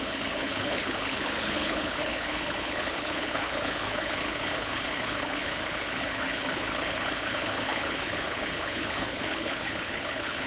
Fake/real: fake